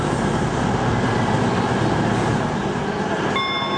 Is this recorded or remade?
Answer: recorded